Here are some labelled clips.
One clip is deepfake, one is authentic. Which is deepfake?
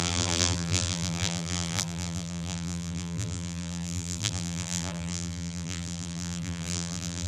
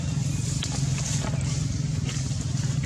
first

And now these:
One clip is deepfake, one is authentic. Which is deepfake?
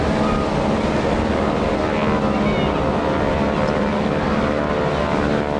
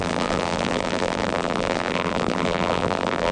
second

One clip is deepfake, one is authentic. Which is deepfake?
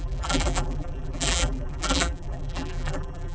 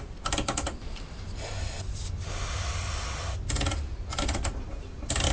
first